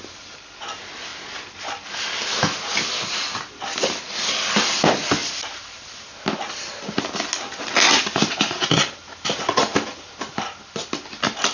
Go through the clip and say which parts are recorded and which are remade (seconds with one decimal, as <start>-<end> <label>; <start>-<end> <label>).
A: 0.0-11.5 recorded